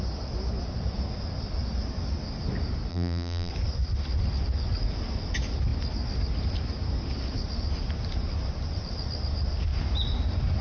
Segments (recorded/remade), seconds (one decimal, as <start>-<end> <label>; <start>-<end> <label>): 0.0-2.9 recorded; 2.9-3.5 remade; 3.5-10.6 recorded

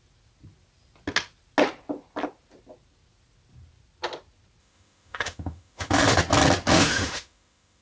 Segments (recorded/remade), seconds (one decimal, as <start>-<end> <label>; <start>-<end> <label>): 0.0-4.6 recorded; 4.6-6.2 remade; 6.2-6.7 recorded; 6.7-7.8 remade

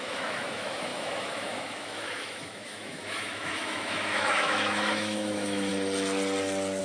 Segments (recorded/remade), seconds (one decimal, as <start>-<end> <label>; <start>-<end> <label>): 0.0-5.7 remade; 5.7-6.8 recorded

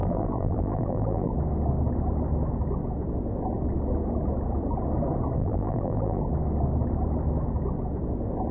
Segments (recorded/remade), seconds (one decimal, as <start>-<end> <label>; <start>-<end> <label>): 0.0-1.3 remade; 1.3-5.4 recorded; 5.4-6.2 remade; 6.2-8.5 recorded

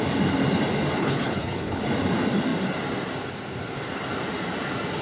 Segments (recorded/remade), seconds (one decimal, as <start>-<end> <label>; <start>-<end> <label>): 0.0-1.0 recorded; 1.0-1.8 remade; 1.8-5.0 recorded

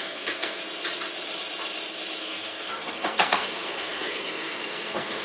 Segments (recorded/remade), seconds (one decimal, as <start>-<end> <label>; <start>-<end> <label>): 0.0-0.6 remade; 0.6-2.2 recorded; 2.2-5.2 remade